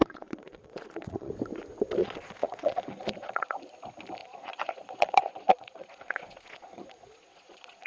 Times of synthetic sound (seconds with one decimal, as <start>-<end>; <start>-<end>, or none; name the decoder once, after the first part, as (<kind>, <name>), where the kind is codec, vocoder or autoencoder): 0.0-1.3 (vocoder, Vocos); 2.0-3.7; 4.2-7.9